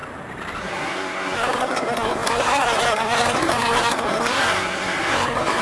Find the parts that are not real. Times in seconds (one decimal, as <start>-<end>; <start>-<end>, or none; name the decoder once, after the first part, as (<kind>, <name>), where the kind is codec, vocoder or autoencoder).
0.6-5.6 (codec, SNAC)